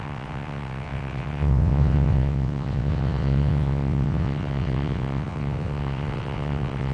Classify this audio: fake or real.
fake